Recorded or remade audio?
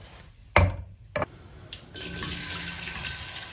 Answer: recorded